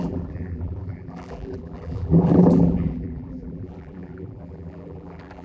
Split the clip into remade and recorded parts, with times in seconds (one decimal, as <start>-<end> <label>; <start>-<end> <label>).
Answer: 0.0-5.4 remade